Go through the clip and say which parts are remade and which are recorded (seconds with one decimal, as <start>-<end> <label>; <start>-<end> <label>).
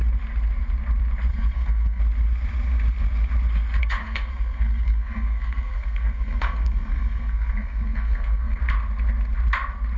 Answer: 0.0-1.3 recorded; 1.3-2.0 remade; 2.0-3.8 recorded; 3.8-8.6 remade; 8.6-10.0 recorded